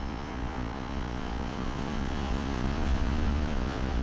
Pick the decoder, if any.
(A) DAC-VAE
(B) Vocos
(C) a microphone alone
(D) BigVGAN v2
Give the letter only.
B